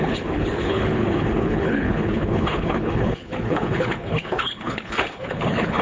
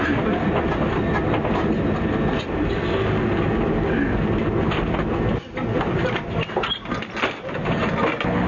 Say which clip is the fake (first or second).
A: first